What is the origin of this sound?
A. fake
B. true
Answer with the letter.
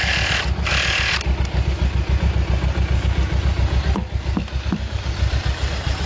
B